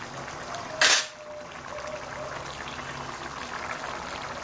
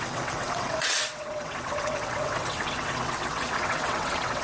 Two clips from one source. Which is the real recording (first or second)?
first